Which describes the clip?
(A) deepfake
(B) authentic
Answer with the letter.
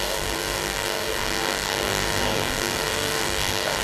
A